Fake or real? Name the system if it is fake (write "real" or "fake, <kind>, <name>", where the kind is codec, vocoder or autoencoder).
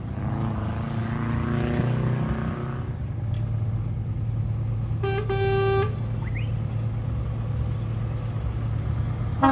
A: real